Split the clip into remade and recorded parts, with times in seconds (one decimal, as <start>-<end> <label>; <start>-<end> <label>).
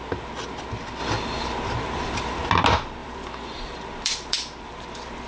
0.0-1.0 recorded; 1.0-2.5 remade; 2.5-3.0 recorded; 3.0-5.3 remade